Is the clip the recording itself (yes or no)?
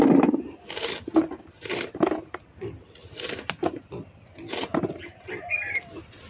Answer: yes